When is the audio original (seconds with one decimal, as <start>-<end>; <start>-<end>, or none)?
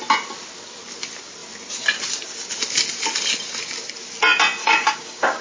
0.0-4.6